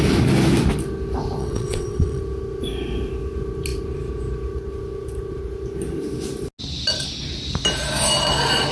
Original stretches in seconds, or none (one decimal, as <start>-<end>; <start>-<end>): 0.0-1.4; 2.2-8.7